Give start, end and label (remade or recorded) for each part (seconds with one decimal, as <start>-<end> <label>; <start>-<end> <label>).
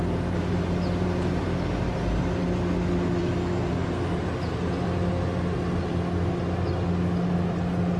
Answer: 0.0-8.0 recorded